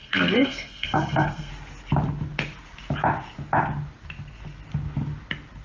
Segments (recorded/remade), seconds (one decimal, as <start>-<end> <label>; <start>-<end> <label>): 0.0-1.5 remade; 1.5-5.6 recorded